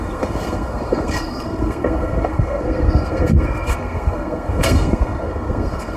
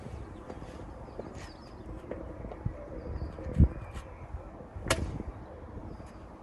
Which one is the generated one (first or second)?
first